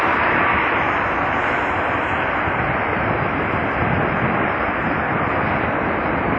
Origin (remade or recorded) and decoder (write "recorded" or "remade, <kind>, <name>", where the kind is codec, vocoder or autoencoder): recorded